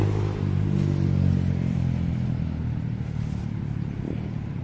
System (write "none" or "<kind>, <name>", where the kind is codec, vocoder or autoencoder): none